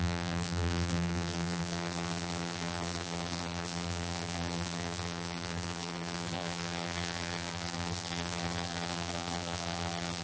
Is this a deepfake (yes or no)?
yes